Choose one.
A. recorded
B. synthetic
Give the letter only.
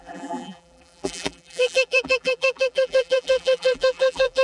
B